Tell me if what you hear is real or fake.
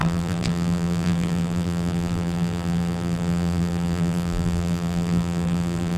fake